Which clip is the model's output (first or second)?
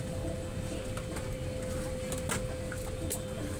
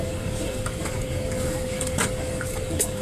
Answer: second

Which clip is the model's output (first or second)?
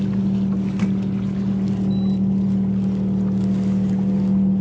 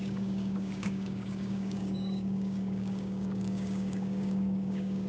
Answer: second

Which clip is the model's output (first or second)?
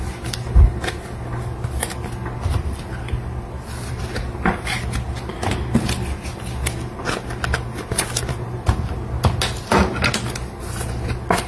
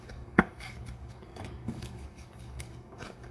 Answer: second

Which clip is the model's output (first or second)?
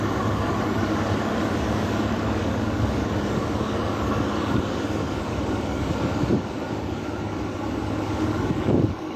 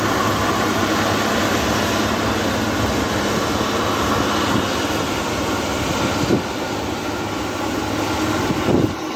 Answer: first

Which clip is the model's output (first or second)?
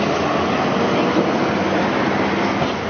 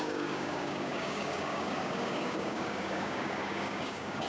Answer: second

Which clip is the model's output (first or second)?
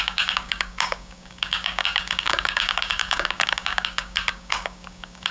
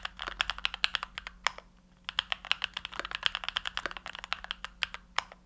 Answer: first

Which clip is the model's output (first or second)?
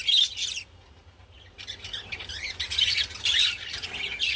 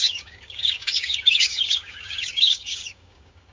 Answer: second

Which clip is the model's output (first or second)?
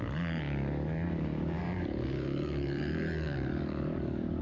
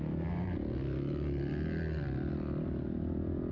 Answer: first